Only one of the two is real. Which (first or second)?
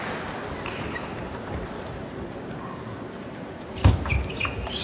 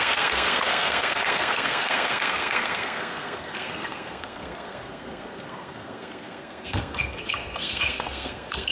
first